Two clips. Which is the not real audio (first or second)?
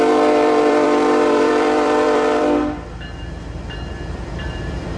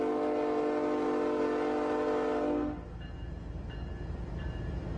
first